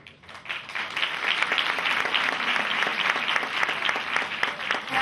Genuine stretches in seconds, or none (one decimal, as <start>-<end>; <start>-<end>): 0.0-5.0